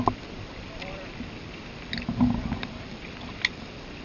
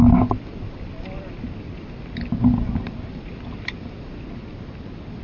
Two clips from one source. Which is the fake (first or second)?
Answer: first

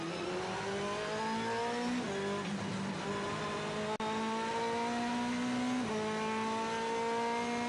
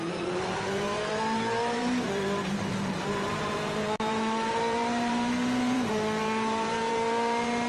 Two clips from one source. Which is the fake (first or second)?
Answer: second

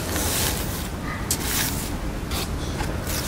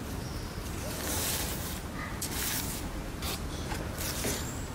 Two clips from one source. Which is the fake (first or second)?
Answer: second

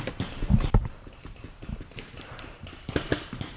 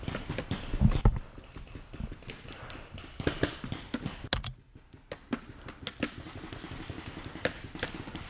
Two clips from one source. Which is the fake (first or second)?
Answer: first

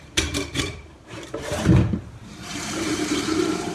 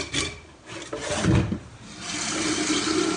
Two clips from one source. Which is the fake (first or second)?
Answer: first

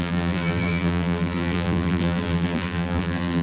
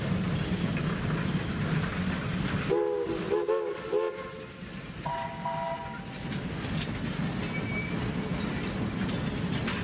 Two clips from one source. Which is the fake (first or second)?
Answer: first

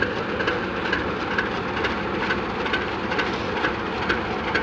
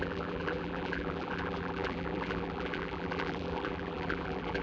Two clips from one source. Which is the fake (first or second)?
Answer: second